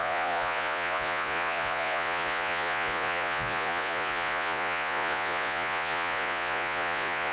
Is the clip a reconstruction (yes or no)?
yes